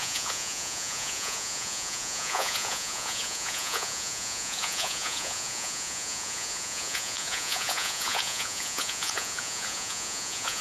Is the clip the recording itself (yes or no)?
no